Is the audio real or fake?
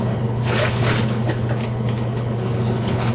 fake